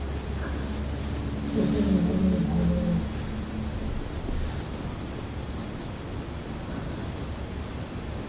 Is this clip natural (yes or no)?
yes